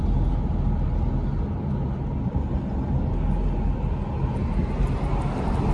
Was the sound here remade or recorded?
recorded